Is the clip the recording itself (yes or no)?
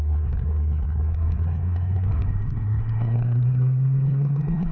no